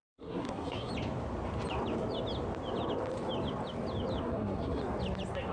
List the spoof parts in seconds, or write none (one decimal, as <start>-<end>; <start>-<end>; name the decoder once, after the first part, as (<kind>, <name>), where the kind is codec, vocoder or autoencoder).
0.0-0.9 (codec, SNAC); 4.2-4.8